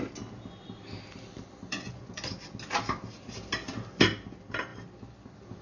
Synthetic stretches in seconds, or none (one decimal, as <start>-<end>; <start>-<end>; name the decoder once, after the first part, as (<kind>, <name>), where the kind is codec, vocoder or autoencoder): 1.7-2.3 (vocoder, Vocos)